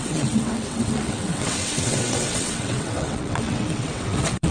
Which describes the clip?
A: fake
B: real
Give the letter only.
A